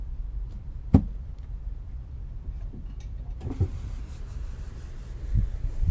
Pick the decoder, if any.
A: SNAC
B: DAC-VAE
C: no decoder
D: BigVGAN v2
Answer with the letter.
D